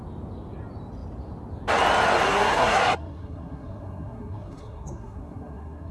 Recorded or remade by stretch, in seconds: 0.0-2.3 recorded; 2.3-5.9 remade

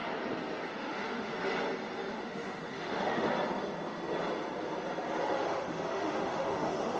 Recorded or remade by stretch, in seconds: 0.0-0.7 recorded; 0.7-1.3 remade; 1.3-2.1 recorded; 2.1-3.3 remade; 3.3-5.2 recorded; 5.2-7.0 remade

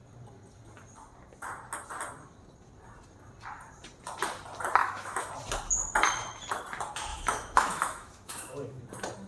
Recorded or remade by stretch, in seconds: 0.0-4.8 recorded; 4.8-5.3 remade; 5.3-7.1 recorded; 7.1-8.8 remade; 8.8-9.3 recorded

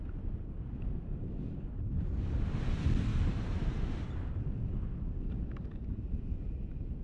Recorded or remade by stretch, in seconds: 0.0-3.1 recorded; 3.1-4.7 remade; 4.7-7.0 recorded

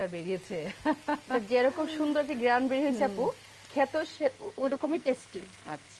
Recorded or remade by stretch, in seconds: 0.0-4.1 recorded; 4.1-6.0 remade

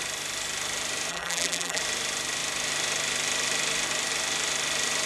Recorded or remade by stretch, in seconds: 0.0-1.1 recorded; 1.1-1.8 remade; 1.8-5.1 recorded